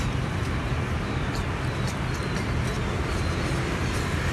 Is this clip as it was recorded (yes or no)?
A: yes